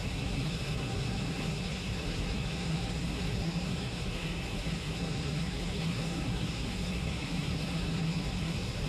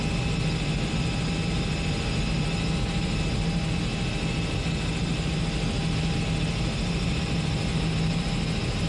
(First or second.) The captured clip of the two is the second